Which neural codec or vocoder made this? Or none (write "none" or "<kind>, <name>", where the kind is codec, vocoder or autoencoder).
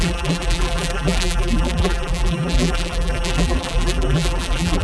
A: vocoder, BigVGAN v2